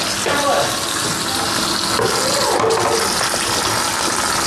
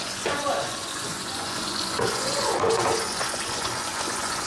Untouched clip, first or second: first